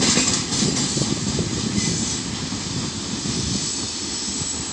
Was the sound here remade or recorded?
recorded